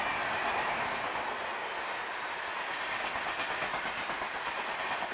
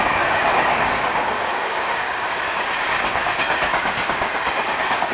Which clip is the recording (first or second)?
first